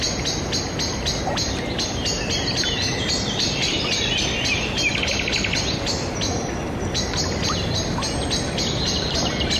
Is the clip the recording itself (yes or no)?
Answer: yes